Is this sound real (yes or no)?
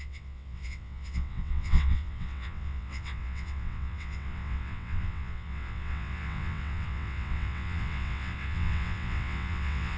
no